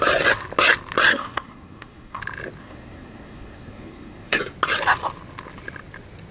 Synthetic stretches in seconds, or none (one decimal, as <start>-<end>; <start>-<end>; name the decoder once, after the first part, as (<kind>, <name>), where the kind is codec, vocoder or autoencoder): 1.1-2.2 (codec, SNAC); 2.6-4.4